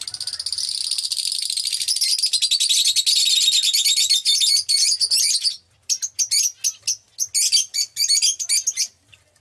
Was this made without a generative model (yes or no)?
yes